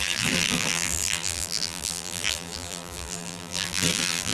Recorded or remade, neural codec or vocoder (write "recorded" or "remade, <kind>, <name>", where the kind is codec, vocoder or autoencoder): remade, vocoder, BigVGAN v2